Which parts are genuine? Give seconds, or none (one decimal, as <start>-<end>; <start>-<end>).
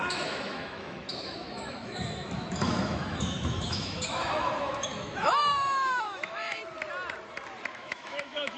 6.6-7.7